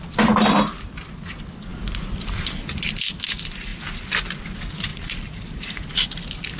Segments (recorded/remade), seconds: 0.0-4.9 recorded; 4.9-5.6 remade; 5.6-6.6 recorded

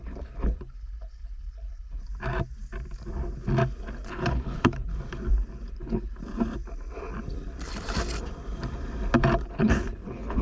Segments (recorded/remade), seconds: 0.0-2.0 remade; 2.0-4.1 recorded; 4.1-4.9 remade; 4.9-5.7 recorded; 5.7-6.2 remade; 6.2-9.5 recorded; 9.5-10.4 remade

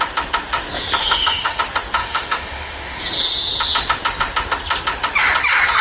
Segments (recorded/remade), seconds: 0.0-1.0 recorded; 1.0-1.6 remade; 1.6-2.0 recorded; 2.0-3.0 remade; 3.0-5.8 recorded

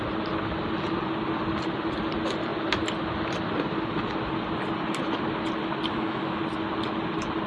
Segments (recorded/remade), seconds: 0.0-5.9 recorded; 5.9-6.4 remade; 6.4-7.5 recorded

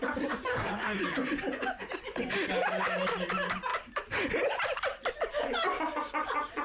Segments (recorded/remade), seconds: 0.0-0.5 recorded; 0.5-1.0 remade; 1.0-6.6 recorded

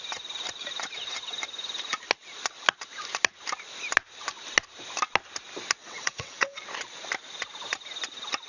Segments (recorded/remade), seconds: 0.0-5.8 recorded; 5.8-6.6 remade; 6.6-8.5 recorded

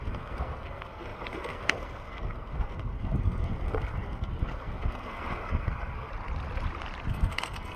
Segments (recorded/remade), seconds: 0.0-6.1 remade; 6.1-7.1 recorded; 7.1-7.8 remade